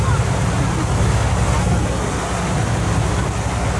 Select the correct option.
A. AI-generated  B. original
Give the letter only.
B